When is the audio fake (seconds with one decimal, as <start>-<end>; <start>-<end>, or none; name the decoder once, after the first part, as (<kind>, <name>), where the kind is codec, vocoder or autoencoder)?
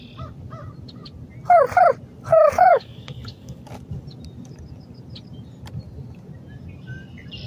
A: 2.3-3.6 (codec, DAC)